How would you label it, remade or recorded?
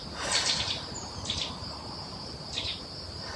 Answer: remade